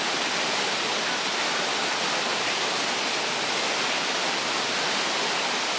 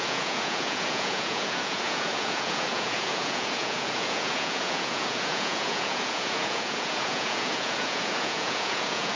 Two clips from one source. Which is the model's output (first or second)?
second